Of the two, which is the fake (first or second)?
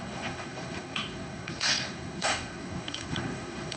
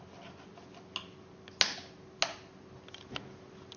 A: first